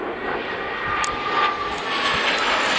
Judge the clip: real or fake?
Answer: real